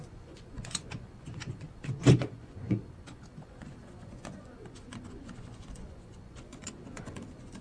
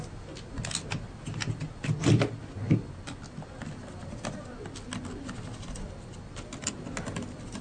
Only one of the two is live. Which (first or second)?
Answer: second